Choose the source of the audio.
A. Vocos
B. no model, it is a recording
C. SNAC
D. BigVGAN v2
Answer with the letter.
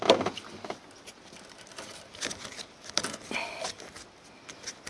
B